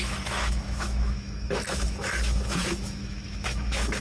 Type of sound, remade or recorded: remade